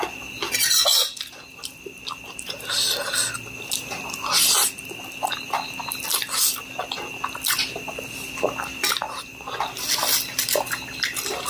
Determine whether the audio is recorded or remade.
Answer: recorded